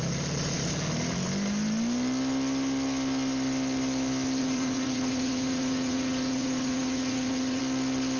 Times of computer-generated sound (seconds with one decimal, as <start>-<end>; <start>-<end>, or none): 4.4-7.6